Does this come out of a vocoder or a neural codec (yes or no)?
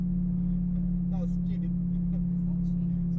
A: no